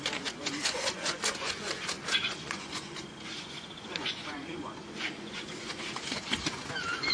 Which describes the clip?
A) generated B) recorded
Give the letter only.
A